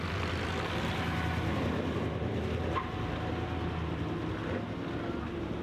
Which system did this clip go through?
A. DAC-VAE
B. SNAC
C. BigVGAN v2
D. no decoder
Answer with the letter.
D